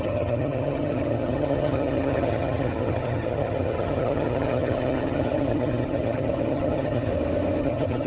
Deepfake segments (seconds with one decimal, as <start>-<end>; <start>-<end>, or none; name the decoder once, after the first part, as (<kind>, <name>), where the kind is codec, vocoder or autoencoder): 0.0-7.1 (vocoder, HiFi-GAN); 7.6-8.1

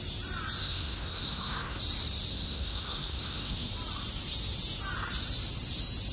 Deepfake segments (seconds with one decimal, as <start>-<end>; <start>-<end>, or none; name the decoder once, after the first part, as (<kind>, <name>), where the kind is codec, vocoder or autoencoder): 0.6-1.8 (codec, SNAC); 2.3-3.7

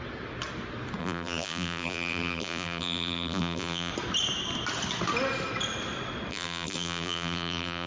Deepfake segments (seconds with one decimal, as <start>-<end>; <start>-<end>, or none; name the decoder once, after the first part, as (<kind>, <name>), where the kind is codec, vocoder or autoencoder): 1.0-3.9 (vocoder, BigVGAN v2); 6.3-7.9

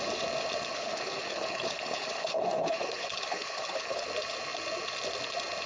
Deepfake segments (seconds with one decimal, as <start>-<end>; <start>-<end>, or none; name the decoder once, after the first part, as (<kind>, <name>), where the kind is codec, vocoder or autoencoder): 0.7-4.1 (codec, HILCodec)

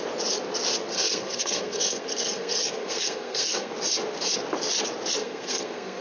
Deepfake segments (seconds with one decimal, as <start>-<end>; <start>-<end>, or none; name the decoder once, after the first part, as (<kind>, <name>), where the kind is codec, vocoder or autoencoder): 0.9-3.7 (codec, SNAC); 5.2-6.0

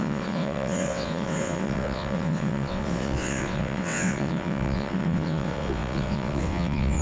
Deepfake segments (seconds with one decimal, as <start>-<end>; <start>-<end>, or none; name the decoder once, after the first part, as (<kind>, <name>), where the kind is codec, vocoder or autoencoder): 0.0-7.0 (vocoder, WaveNeXt)

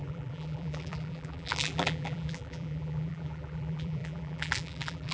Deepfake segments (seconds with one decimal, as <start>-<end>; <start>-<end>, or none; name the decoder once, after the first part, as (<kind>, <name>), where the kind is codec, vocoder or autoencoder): 0.0-5.1 (vocoder, BigVGAN v2)